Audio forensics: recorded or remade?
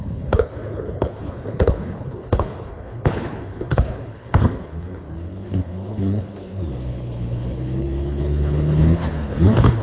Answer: remade